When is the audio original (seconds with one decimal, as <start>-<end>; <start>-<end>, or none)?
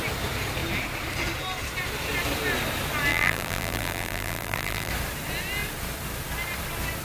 0.0-3.1; 4.9-7.0